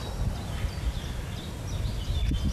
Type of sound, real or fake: real